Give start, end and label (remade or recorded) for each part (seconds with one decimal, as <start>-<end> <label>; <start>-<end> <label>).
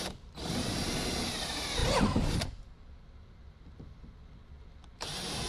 0.0-0.8 remade; 0.8-1.4 recorded; 1.4-1.8 remade; 1.8-5.0 recorded; 5.0-5.5 remade